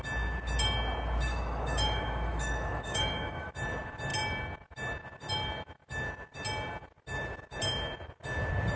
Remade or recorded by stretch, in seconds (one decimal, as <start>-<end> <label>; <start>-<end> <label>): 0.0-1.3 recorded; 1.3-3.5 remade; 3.5-8.8 recorded